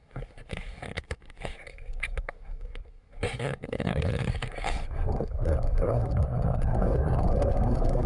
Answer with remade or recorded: remade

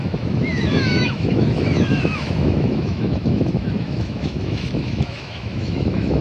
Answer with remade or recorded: remade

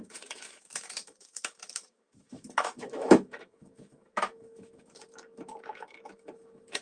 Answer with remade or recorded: remade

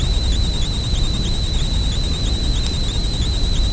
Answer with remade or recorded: recorded